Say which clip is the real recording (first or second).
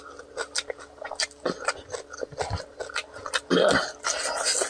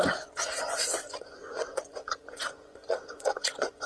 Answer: first